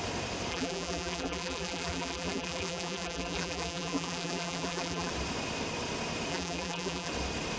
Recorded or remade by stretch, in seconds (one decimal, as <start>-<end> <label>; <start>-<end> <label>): 0.0-0.5 recorded; 0.5-5.1 remade; 5.1-6.3 recorded; 6.3-7.1 remade; 7.1-7.6 recorded